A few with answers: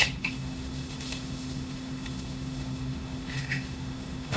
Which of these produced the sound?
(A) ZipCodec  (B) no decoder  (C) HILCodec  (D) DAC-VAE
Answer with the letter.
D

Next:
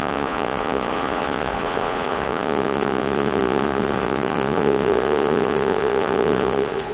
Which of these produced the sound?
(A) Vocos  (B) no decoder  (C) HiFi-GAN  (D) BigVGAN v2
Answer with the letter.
A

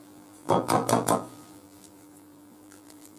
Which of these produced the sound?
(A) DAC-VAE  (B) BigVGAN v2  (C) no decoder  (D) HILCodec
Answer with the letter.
B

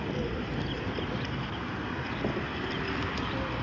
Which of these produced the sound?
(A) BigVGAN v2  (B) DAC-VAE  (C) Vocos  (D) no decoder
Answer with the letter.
D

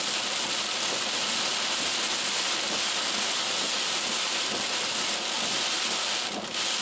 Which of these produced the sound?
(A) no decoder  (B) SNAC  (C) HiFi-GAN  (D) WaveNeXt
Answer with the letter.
A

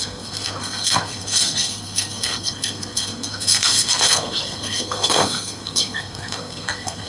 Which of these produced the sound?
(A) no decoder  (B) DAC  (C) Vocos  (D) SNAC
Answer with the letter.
D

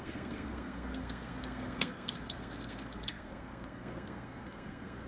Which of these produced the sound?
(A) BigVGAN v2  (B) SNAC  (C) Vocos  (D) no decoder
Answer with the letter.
B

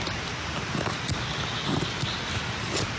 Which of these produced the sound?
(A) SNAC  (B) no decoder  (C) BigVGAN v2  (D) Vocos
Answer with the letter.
B